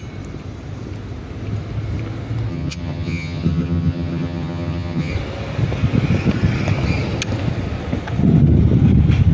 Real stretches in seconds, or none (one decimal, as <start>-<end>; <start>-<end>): 0.0-2.5; 5.1-9.3